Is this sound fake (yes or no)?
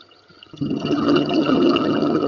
yes